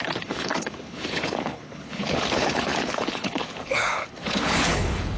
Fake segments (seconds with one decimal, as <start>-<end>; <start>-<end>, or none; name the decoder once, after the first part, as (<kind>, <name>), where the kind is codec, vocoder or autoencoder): 0.0-5.2 (codec, HILCodec)